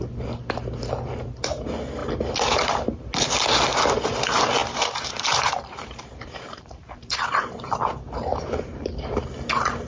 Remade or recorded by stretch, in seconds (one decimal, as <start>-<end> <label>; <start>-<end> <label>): 0.0-4.6 recorded; 4.6-7.7 remade; 7.7-8.3 recorded; 8.3-9.2 remade; 9.2-9.9 recorded